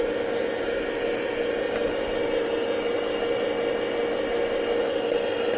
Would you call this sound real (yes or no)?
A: yes